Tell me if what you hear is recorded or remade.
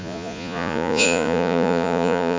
remade